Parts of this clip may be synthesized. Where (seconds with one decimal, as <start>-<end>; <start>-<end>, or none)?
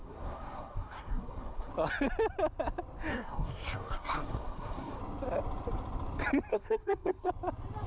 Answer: 0.0-1.7; 3.1-5.0; 6.5-7.3